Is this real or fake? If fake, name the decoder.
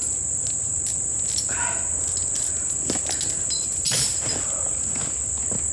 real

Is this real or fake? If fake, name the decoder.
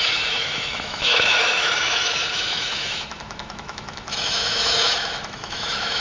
fake, autoencoder, DAC-VAE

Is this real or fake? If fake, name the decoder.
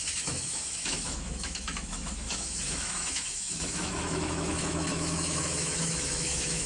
fake, autoencoder, DAC-VAE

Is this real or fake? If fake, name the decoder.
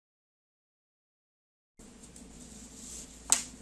real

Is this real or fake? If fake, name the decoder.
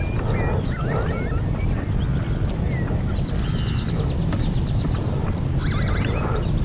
real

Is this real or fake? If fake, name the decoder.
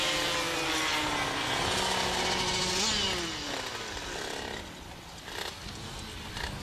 real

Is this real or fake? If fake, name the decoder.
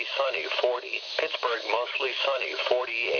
fake, autoencoder, DAC-VAE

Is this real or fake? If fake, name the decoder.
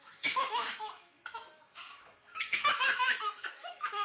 fake, autoencoder, DAC-VAE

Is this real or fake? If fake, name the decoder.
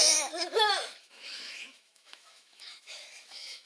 fake, autoencoder, DAC-VAE